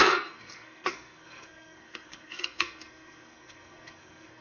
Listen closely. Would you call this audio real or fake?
fake